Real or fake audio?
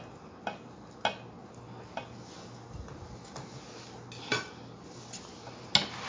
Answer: real